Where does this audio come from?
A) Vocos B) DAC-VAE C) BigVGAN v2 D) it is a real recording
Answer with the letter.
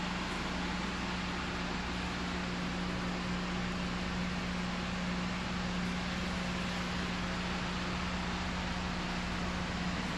D